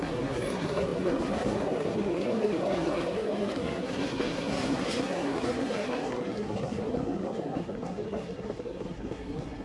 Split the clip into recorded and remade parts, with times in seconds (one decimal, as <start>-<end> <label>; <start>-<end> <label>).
0.0-9.6 remade